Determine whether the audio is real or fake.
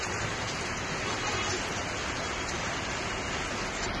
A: real